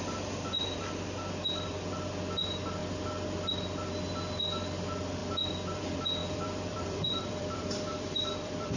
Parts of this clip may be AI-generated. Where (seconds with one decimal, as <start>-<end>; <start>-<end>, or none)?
6.2-8.8